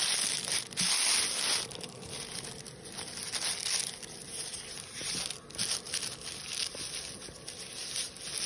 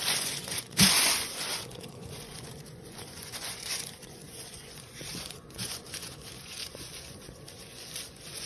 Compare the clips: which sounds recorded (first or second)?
first